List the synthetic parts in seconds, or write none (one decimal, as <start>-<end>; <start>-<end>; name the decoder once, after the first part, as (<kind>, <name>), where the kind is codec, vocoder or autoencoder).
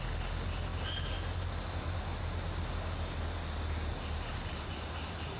none